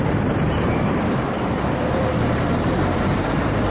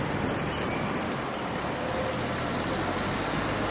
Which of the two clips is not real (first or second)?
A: first